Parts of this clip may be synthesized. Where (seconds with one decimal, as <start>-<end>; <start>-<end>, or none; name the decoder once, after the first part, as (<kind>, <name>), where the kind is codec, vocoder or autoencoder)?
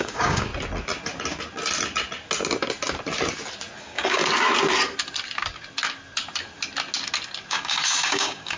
0.0-0.5 (codec, DAC); 3.8-4.2; 7.5-8.6